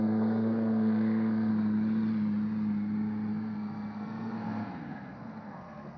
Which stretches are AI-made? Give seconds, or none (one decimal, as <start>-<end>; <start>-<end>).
0.0-1.5; 3.3-6.0